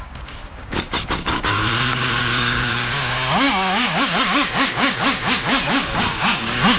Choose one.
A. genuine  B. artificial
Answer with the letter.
B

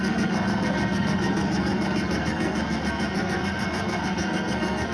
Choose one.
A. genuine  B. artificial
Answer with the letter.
B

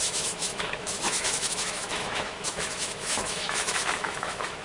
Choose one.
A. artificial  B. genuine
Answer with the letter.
A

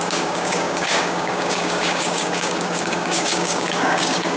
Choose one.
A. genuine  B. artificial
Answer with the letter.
B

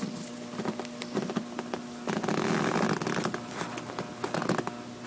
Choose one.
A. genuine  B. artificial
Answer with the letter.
A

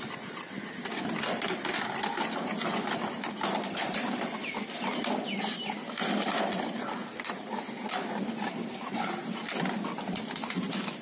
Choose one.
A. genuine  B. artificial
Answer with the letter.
B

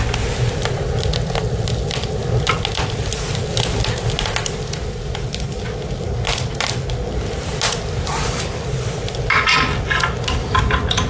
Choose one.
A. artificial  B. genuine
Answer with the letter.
B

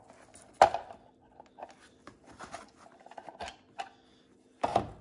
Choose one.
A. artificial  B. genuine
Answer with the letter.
B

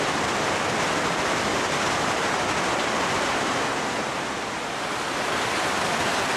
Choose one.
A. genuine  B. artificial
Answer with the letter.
A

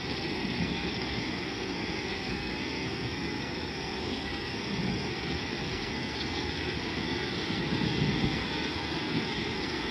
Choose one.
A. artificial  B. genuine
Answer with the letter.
A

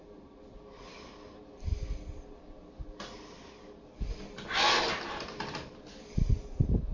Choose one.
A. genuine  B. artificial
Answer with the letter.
A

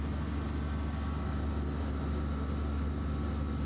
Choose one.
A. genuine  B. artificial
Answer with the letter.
A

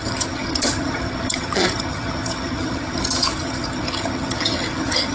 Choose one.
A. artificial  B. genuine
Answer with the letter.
A